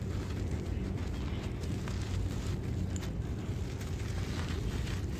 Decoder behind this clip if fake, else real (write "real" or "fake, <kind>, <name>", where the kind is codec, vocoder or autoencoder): real